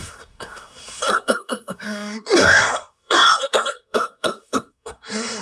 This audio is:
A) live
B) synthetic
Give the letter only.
B